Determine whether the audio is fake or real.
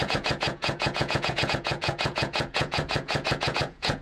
fake